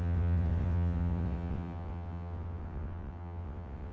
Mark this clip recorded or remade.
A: remade